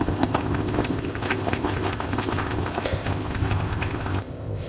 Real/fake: fake